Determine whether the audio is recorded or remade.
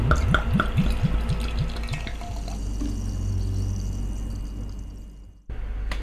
recorded